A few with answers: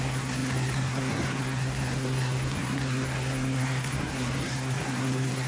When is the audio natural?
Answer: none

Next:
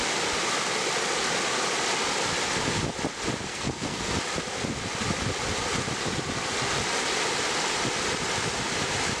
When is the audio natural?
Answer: 0.0-3.5; 4.1-9.2

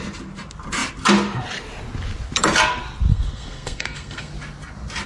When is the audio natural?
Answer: 0.0-3.1; 4.3-5.1

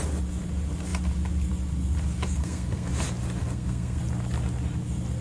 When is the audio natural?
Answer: 0.0-2.3; 2.9-3.4; 4.0-5.2

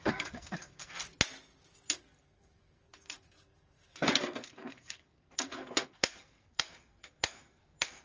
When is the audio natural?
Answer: 1.0-1.9

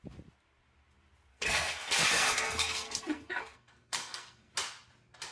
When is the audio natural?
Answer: 0.0-1.3; 4.5-5.3

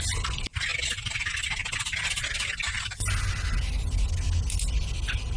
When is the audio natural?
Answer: 0.0-5.4